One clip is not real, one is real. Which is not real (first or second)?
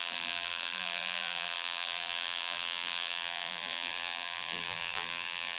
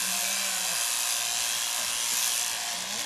first